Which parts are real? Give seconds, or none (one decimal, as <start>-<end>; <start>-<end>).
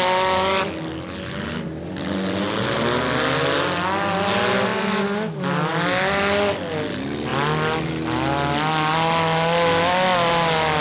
0.0-10.8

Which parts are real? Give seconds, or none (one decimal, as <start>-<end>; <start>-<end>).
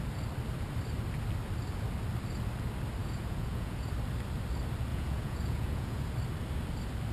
0.0-3.0; 3.9-4.9; 6.1-7.1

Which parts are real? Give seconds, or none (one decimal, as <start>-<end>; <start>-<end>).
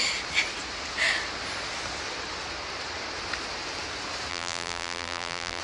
0.0-4.3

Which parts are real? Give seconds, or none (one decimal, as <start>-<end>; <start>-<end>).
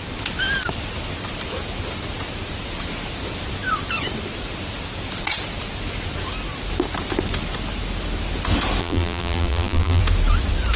0.0-8.8; 10.0-10.8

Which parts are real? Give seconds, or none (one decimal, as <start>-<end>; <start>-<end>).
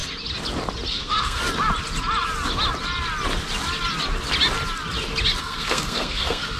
0.0-0.9; 1.4-5.4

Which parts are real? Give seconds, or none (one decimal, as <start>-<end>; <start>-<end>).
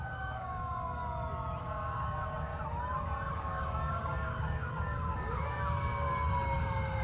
1.0-1.6; 2.5-3.3; 6.1-6.6